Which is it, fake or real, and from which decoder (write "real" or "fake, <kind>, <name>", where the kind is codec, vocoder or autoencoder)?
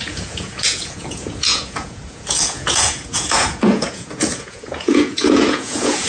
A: fake, vocoder, Vocos